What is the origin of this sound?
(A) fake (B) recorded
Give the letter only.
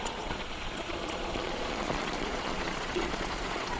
A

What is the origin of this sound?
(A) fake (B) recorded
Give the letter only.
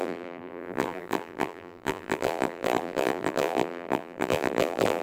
A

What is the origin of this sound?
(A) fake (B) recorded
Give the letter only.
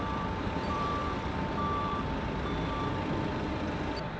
A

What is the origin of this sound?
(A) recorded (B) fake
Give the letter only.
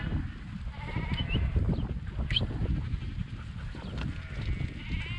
A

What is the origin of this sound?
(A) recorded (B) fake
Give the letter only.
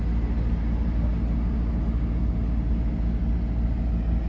A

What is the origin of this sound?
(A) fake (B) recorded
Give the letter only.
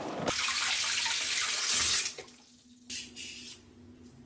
B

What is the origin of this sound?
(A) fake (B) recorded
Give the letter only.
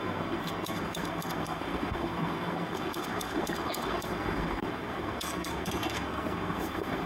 A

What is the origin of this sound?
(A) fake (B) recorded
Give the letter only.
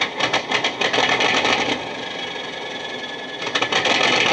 B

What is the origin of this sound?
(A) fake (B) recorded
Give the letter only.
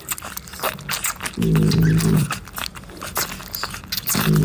B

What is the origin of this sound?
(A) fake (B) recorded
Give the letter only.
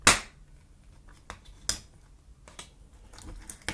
B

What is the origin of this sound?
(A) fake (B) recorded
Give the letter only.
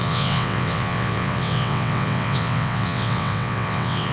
A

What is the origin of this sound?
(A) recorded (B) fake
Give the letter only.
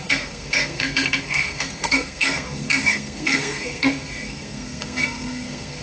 B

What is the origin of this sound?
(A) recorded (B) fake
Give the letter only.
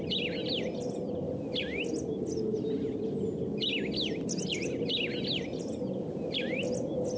A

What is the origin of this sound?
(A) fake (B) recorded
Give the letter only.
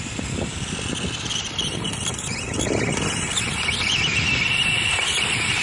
B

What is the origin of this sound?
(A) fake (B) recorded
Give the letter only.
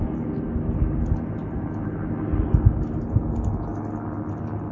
B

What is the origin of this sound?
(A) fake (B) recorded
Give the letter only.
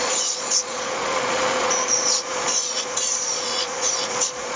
A